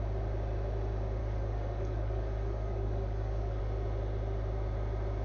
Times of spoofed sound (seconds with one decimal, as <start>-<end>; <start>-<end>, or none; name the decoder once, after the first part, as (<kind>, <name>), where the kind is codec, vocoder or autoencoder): 1.2-3.6 (codec, DAC)